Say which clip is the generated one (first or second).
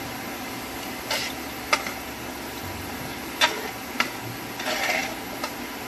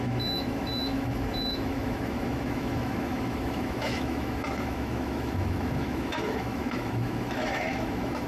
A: second